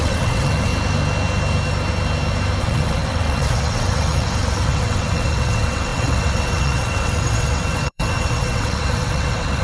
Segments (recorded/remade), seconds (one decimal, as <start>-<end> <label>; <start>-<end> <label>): 0.0-0.7 remade; 0.7-2.6 recorded; 2.6-9.6 remade